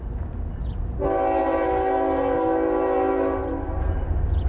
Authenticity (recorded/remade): recorded